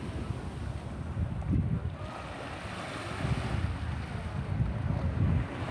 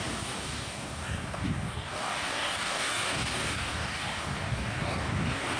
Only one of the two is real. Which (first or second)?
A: first